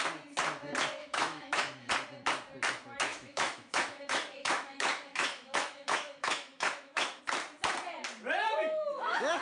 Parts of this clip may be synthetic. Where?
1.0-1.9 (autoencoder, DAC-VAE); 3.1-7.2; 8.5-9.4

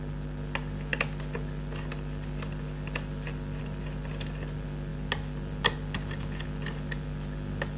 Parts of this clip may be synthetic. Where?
none

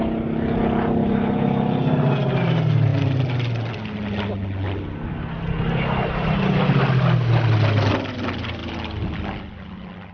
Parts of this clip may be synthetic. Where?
none

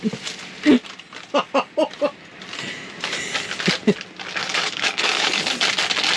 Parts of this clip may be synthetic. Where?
4.4-5.4 (codec, DAC)

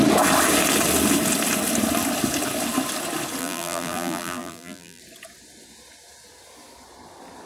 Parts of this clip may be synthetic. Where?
3.4-5.0 (vocoder, BigVGAN v2)

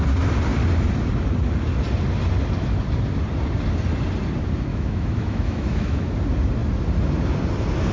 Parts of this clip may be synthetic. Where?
4.7-6.1 (autoencoder, DAC-VAE)

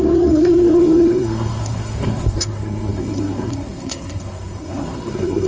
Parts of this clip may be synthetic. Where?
0.0-5.5 (codec, SNAC)

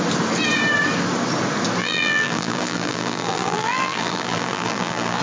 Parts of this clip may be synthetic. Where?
1.8-5.2 (vocoder, BigVGAN v2)